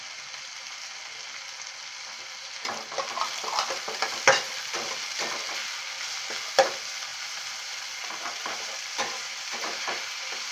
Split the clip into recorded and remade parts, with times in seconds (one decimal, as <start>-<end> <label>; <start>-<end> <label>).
0.0-7.1 recorded; 7.1-10.5 remade